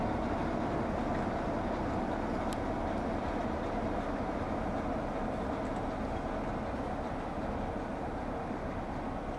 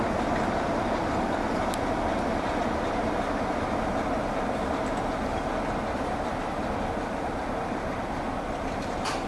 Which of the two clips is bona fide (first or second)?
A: first